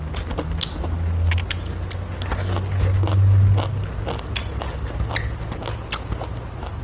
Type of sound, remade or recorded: recorded